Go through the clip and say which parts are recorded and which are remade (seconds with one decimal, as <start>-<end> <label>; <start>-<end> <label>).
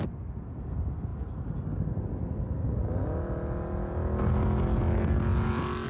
0.0-5.9 recorded